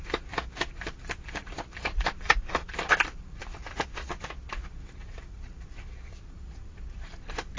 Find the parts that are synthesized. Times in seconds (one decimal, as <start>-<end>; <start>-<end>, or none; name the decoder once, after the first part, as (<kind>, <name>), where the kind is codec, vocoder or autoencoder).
none